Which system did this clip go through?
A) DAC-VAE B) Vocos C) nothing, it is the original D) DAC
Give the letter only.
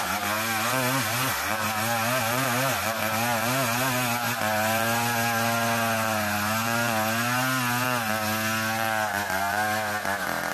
C